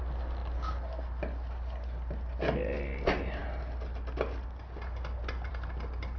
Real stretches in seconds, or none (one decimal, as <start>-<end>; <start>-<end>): 0.0-6.2